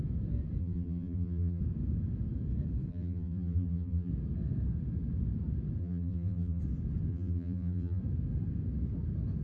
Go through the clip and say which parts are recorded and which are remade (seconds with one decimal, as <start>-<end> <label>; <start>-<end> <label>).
0.0-0.6 recorded; 0.6-1.6 remade; 1.6-2.9 recorded; 2.9-4.1 remade; 4.1-5.8 recorded; 5.8-6.6 remade; 6.6-7.1 recorded; 7.1-8.0 remade; 8.0-9.4 recorded